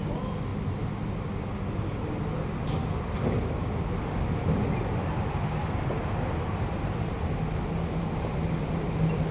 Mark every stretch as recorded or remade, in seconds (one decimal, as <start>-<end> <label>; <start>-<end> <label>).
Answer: 0.0-9.3 recorded